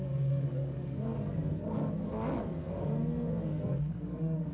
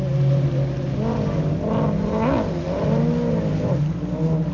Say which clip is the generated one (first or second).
first